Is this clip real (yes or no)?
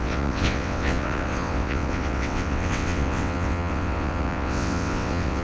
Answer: no